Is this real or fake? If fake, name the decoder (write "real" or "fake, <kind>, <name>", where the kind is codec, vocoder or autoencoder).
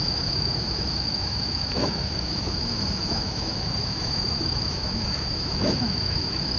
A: fake, autoencoder, DAC-VAE